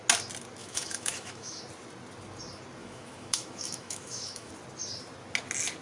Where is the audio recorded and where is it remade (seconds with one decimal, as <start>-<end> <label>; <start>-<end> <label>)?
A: 0.0-0.6 recorded; 0.6-1.6 remade; 1.6-2.8 recorded; 2.8-4.5 remade; 4.5-5.8 recorded

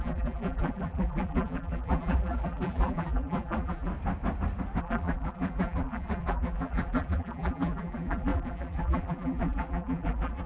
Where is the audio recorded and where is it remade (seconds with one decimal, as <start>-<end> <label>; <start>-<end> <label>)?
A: 0.0-3.9 remade; 3.9-4.8 recorded; 4.8-10.5 remade